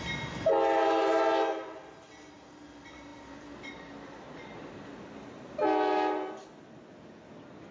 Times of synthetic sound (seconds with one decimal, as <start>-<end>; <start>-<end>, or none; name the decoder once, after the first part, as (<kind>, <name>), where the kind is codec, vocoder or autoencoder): none